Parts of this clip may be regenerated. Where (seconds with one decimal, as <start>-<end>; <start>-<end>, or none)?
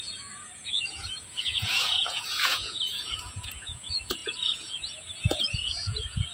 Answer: 0.0-6.3